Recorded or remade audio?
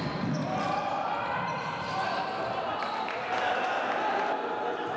recorded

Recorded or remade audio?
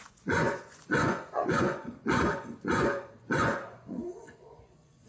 remade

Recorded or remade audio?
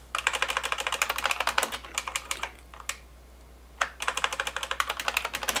recorded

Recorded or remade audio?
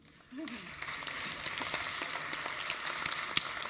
recorded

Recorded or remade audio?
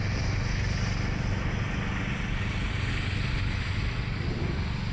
recorded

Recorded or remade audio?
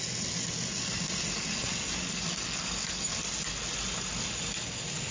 recorded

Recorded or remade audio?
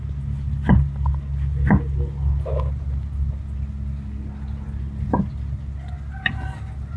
recorded